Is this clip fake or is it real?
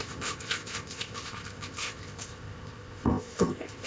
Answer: fake